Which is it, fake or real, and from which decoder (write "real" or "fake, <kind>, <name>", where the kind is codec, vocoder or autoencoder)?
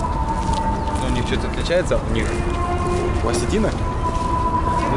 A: real